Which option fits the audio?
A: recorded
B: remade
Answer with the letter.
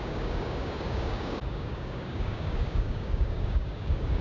B